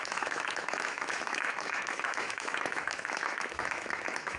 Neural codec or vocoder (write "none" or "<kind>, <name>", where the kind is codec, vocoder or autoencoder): autoencoder, DAC-VAE